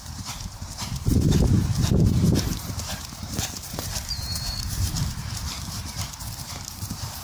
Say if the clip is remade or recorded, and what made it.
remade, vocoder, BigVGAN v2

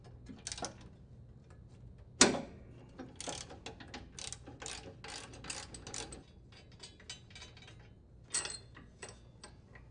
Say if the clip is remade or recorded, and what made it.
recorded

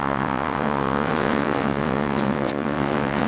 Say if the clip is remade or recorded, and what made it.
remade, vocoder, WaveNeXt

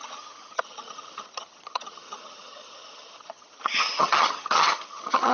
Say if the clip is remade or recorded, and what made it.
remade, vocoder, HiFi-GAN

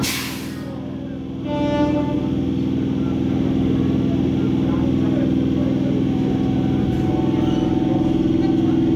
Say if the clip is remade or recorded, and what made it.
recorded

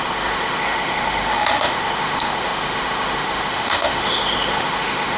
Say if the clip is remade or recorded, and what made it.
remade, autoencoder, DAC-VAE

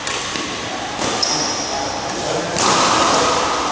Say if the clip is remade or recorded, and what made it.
recorded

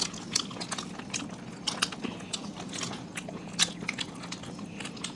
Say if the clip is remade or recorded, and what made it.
recorded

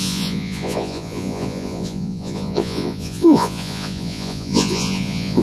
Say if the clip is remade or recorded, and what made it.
remade, vocoder, Vocos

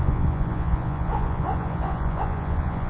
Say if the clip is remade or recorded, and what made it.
remade, vocoder, Vocos